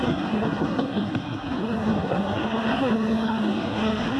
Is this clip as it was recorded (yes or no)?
no